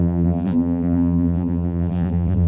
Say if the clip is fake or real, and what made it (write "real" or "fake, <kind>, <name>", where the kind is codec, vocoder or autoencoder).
fake, vocoder, BigVGAN v2